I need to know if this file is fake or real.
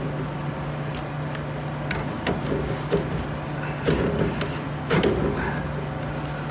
real